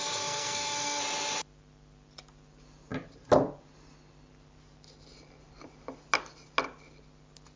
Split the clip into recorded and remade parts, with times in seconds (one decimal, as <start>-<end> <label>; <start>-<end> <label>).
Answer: 0.0-1.0 remade; 1.0-7.6 recorded